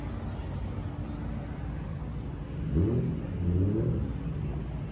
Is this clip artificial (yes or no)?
no